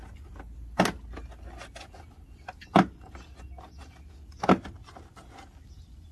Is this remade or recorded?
recorded